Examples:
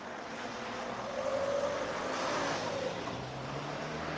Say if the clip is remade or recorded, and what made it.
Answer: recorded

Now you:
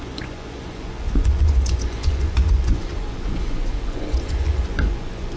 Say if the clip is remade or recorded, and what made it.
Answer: remade, vocoder, Vocos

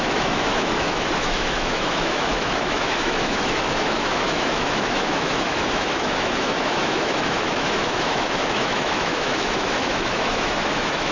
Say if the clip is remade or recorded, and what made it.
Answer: remade, autoencoder, DAC-VAE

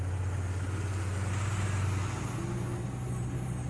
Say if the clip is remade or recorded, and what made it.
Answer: recorded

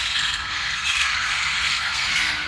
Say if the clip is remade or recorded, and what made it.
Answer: remade, codec, SNAC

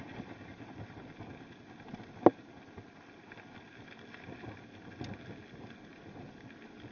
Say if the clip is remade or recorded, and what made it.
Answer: recorded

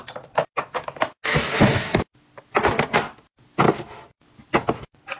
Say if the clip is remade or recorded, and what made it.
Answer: recorded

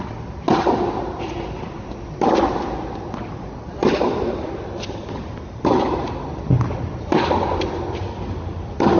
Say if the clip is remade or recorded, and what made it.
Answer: recorded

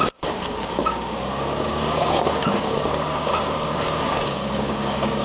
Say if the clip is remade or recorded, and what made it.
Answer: remade, codec, DAC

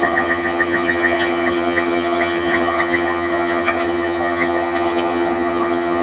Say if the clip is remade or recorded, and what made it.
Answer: remade, vocoder, HiFi-GAN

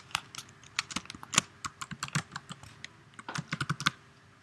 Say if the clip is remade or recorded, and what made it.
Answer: recorded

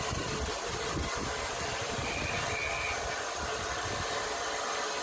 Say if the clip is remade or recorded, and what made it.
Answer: recorded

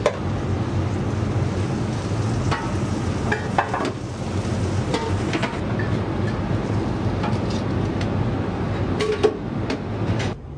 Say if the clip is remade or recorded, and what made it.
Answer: recorded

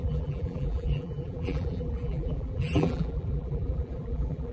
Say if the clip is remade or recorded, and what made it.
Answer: remade, vocoder, BigVGAN v2